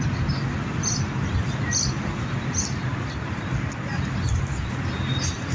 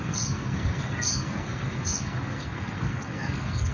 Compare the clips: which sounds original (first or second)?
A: first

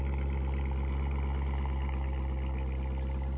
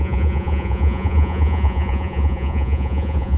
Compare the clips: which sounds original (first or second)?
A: first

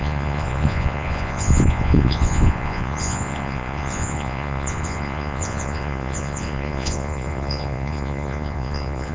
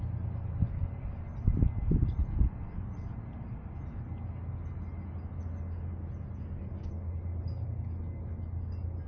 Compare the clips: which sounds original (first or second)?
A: second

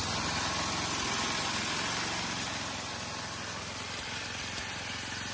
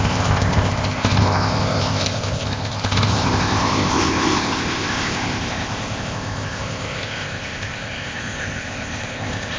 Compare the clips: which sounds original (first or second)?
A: first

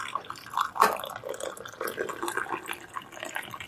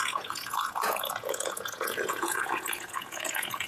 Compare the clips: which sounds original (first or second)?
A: first